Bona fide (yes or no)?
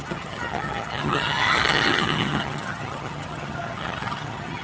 no